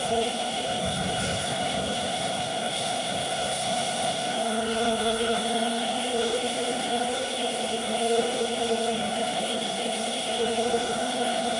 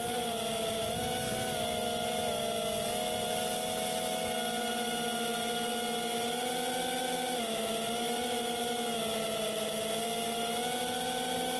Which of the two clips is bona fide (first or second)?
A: second